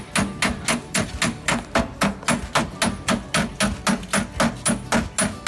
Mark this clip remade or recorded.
recorded